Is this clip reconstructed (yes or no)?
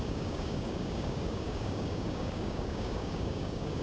yes